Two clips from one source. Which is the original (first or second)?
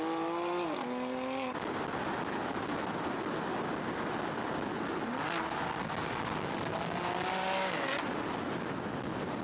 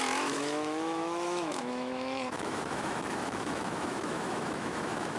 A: first